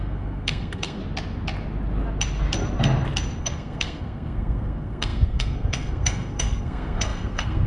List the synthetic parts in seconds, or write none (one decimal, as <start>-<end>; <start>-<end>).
0.0-1.0; 3.4-7.7

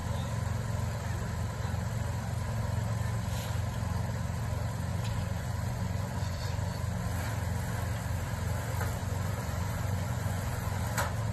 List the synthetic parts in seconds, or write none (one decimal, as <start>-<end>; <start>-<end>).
4.9-6.8; 9.0-10.8